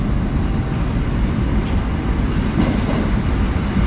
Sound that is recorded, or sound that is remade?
recorded